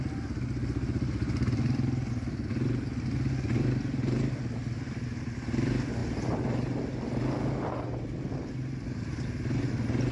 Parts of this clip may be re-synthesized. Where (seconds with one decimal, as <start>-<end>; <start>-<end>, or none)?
none

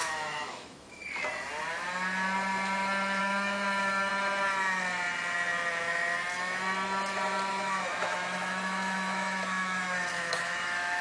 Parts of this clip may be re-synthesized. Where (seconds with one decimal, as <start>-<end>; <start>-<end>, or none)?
0.0-1.0; 3.2-4.1; 7.5-11.0